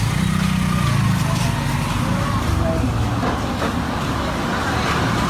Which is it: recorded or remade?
recorded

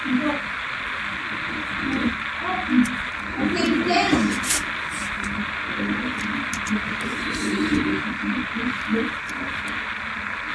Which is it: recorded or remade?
recorded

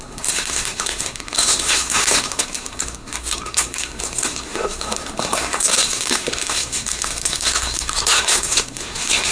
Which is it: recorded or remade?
remade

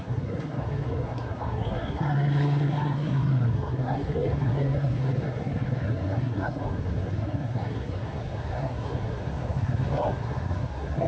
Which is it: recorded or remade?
remade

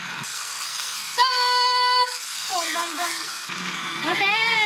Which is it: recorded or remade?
remade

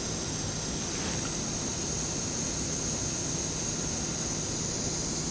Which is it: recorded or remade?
recorded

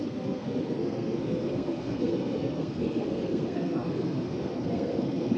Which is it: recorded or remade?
remade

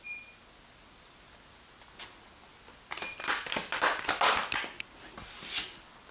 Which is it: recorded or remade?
recorded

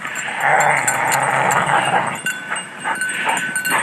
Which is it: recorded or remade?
recorded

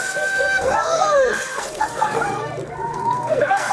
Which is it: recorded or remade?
remade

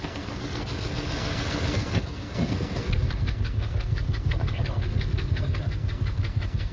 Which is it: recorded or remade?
remade